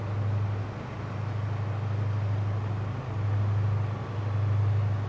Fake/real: real